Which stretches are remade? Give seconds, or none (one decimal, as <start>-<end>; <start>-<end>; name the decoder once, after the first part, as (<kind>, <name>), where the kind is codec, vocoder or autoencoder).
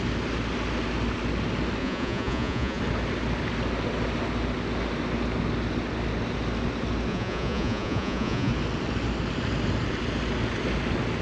1.8-2.8 (vocoder, Vocos); 7.1-8.5